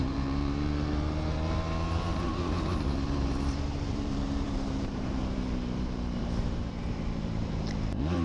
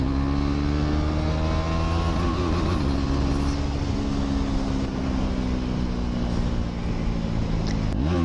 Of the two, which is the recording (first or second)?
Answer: second